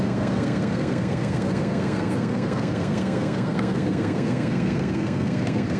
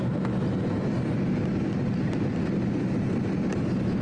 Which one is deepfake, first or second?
first